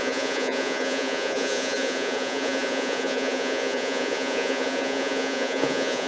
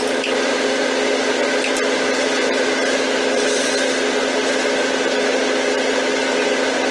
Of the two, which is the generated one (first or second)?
first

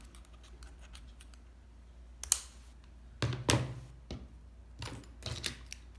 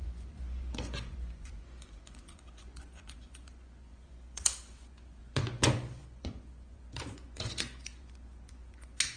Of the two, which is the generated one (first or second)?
second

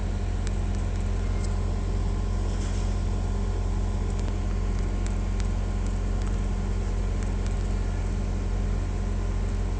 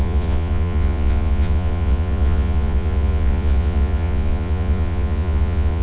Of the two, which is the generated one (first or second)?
second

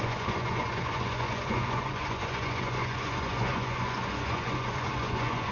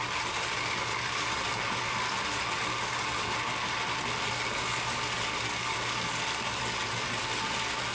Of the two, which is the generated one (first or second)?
first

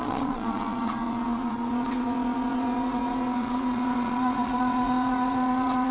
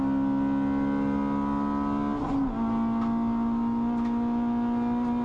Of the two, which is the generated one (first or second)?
first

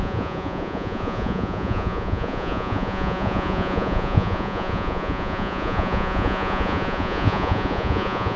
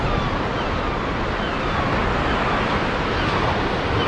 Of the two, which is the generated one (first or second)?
first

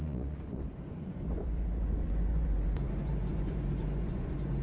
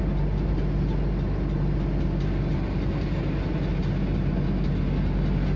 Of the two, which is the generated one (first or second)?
first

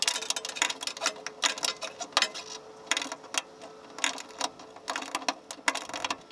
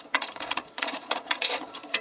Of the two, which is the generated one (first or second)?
second